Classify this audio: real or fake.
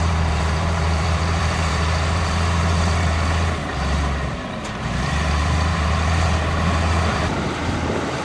fake